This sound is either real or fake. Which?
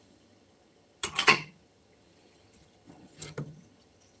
fake